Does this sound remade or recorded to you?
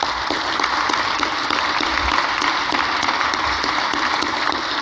recorded